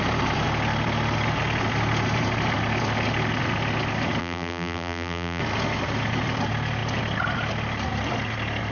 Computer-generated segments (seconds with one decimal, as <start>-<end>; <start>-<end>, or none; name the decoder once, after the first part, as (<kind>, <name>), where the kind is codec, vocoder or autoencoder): 4.2-5.4 (vocoder, BigVGAN v2)